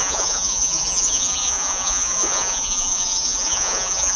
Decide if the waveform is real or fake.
fake